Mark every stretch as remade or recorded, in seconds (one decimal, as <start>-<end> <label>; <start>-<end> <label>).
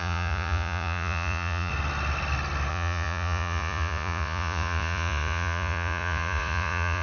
0.0-1.7 remade; 1.7-2.7 recorded; 2.7-7.0 remade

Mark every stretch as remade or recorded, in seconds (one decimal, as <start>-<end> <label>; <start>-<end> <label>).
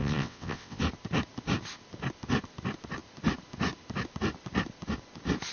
0.0-0.8 remade; 0.8-5.5 recorded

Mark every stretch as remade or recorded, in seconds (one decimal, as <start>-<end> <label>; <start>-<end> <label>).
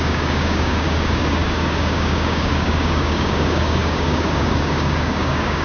0.0-5.6 remade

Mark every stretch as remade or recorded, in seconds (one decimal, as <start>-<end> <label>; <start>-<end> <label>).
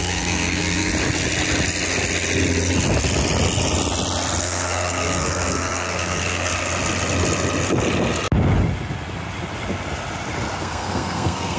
0.0-0.9 remade; 0.9-4.4 recorded; 4.4-6.5 remade; 6.5-10.6 recorded; 10.6-11.6 remade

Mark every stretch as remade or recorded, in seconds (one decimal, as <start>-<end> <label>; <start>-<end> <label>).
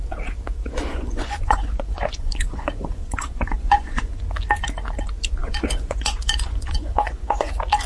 0.0-0.6 recorded; 0.6-4.2 remade; 4.2-5.4 recorded; 5.4-7.5 remade; 7.5-7.9 recorded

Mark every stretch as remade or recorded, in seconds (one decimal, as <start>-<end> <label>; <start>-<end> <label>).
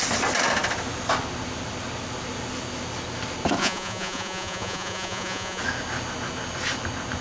0.0-3.6 recorded; 3.6-5.6 remade; 5.6-7.2 recorded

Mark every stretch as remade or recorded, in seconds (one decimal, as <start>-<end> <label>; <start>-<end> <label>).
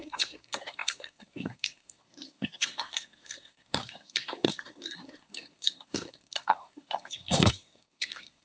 0.0-8.4 remade